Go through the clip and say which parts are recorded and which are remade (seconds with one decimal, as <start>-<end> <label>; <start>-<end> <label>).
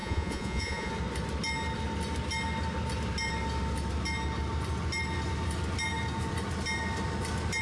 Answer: 0.0-0.9 remade; 0.9-7.6 recorded